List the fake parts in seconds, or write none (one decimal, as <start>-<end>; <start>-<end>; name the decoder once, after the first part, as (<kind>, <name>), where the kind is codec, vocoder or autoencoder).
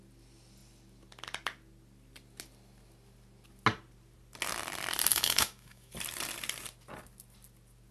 5.1-5.9 (autoencoder, DAC-VAE)